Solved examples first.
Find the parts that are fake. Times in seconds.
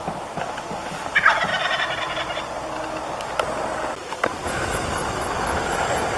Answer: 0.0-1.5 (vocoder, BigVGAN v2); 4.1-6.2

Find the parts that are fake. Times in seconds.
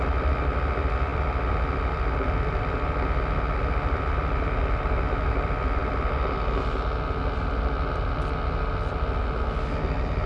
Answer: none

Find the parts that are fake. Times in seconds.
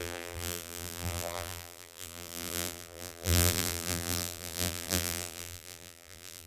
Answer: 0.0-6.5 (vocoder, BigVGAN v2)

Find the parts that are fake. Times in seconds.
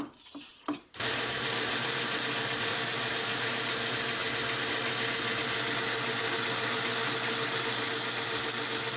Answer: 0.5-2.3 (vocoder, BigVGAN v2)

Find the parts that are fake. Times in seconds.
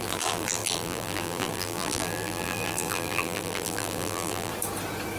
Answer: 0.0-4.5 (vocoder, BigVGAN v2)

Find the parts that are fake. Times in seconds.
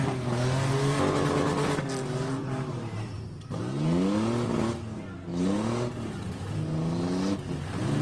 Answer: 2.4-3.6 (vocoder, BigVGAN v2); 5.3-6.4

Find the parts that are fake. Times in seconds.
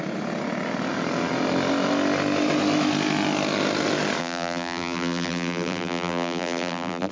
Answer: 4.2-7.1 (vocoder, BigVGAN v2)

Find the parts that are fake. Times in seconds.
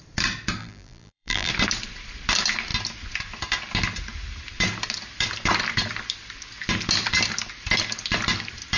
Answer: 0.6-1.5 (vocoder, BigVGAN v2)